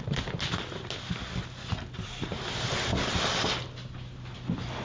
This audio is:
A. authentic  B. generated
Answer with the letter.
A